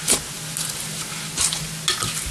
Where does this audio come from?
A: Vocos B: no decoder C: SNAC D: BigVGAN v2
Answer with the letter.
B